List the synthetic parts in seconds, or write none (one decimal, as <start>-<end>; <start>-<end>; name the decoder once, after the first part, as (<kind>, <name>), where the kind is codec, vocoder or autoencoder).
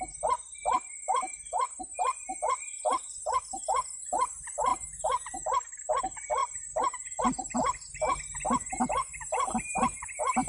1.9-3.1 (vocoder, BigVGAN v2)